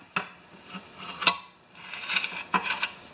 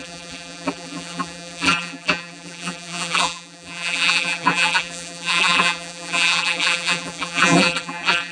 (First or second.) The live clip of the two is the first